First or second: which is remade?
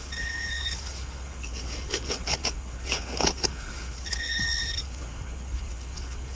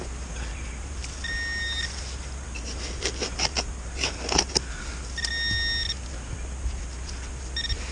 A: first